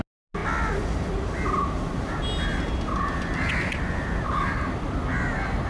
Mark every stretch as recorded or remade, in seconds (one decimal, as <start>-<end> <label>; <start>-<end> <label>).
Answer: 0.0-5.7 recorded